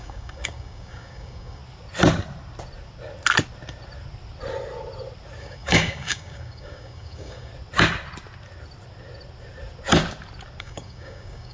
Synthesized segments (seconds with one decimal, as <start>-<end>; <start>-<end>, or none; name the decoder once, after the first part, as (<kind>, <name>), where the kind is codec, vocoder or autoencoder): 0.0-1.6 (codec, DAC); 5.4-7.5; 10.6-11.5

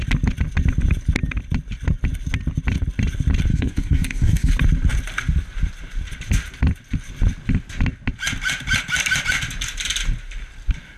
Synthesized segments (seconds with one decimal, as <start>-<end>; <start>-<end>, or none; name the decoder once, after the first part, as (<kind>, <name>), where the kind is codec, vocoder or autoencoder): 3.5-4.5 (codec, DAC)